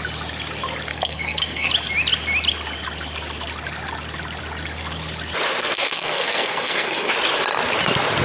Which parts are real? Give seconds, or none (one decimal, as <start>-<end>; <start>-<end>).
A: 0.0-0.9; 1.7-5.6; 7.1-8.2